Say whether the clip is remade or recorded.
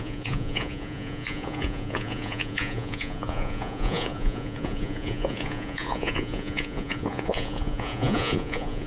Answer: remade